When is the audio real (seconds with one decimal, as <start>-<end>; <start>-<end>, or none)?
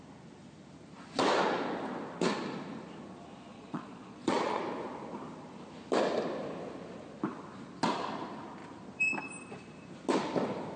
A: 0.0-3.5; 4.6-10.8